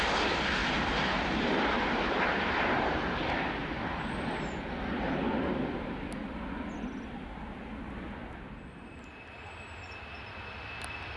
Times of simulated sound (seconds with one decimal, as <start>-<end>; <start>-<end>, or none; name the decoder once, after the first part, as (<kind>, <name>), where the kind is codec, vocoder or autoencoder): 0.6-2.8 (vocoder, BigVGAN v2)